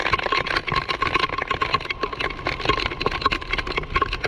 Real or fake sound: real